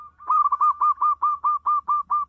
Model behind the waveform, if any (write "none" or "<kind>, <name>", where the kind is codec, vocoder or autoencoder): none